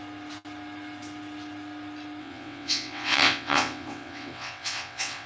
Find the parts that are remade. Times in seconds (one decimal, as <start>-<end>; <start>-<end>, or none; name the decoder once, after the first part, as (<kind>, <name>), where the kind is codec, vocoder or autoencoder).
2.2-5.3 (vocoder, WaveNeXt)